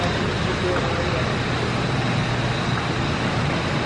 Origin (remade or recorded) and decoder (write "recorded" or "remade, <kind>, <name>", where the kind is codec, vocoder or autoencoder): recorded